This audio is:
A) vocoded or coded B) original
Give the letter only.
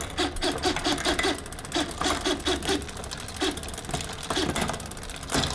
B